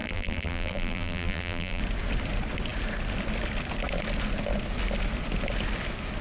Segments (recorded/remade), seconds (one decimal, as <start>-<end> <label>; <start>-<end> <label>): 0.0-1.8 remade; 1.8-6.2 recorded